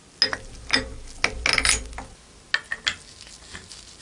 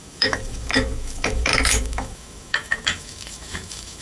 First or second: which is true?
first